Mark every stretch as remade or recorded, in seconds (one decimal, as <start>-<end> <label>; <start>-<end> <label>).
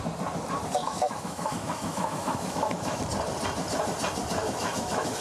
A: 0.0-0.8 recorded; 0.8-3.0 remade; 3.0-4.4 recorded; 4.4-5.2 remade